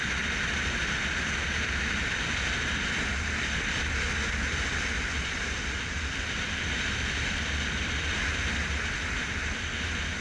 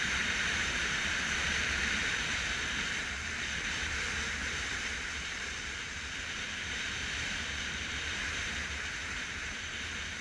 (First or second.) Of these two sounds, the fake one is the second